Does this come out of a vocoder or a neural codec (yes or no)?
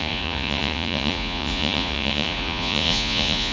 yes